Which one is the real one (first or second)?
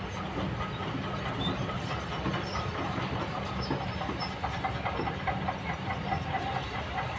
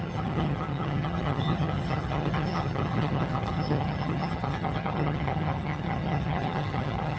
first